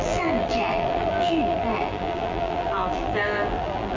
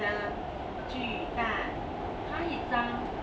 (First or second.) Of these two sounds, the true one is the second